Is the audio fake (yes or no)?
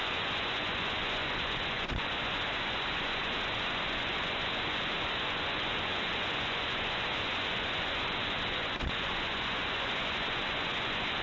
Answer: yes